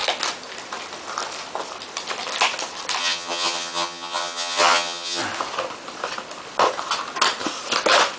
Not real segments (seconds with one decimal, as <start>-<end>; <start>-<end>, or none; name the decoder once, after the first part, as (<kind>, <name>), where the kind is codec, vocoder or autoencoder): 3.0-5.2 (vocoder, HiFi-GAN)